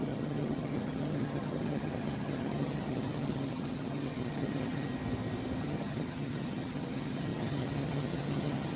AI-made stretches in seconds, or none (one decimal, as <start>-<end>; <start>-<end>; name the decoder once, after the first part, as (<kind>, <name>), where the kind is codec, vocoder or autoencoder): 0.0-4.9 (vocoder, HiFi-GAN); 5.6-8.8